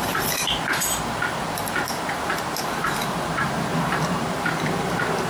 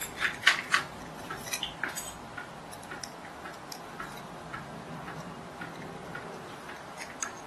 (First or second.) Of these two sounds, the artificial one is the first